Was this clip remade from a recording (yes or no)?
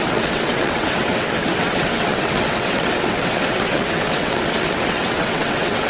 yes